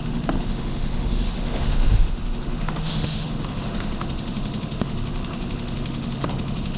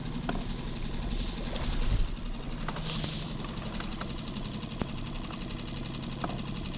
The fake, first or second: first